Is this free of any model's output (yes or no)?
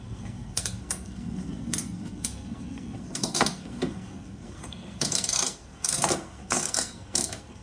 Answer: no